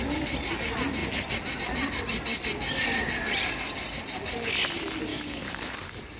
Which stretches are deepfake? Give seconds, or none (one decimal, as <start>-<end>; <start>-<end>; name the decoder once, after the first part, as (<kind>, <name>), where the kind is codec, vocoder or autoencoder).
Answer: 5.1-6.2 (codec, DAC)